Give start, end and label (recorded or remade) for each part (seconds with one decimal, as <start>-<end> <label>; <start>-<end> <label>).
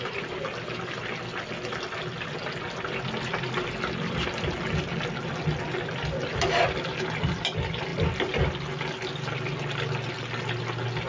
0.0-11.1 recorded